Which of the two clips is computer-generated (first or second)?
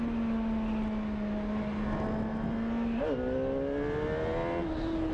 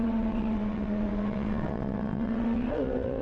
second